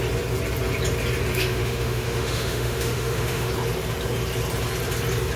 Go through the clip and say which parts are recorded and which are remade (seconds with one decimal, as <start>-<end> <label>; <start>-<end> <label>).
0.0-1.3 recorded; 1.3-3.5 remade; 3.5-5.4 recorded